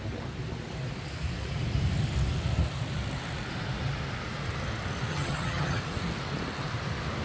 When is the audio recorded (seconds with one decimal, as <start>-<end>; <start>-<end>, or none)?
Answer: 0.0-5.1; 5.8-7.2